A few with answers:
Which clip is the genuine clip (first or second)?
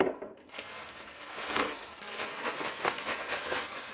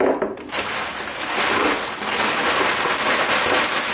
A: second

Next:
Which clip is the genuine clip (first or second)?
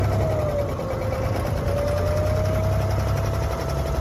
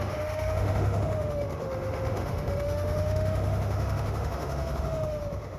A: first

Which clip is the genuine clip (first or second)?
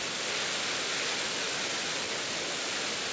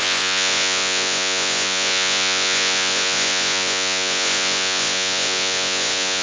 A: first